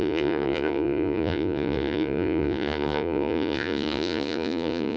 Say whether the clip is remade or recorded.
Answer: remade